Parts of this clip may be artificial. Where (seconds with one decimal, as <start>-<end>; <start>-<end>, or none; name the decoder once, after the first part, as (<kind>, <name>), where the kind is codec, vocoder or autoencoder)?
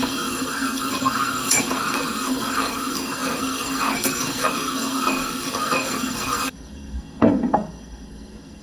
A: 0.0-8.6 (codec, SNAC)